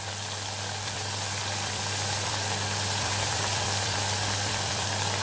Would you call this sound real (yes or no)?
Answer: no